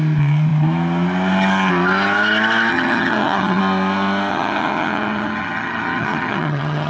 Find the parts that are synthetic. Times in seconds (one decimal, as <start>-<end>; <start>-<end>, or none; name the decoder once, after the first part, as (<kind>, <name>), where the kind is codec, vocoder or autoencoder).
2.7-3.6 (vocoder, HiFi-GAN); 4.3-6.9